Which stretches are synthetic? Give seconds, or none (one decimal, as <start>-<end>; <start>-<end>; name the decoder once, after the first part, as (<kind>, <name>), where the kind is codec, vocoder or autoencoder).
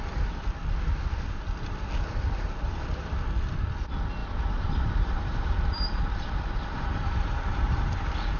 4.2-8.0 (vocoder, BigVGAN v2)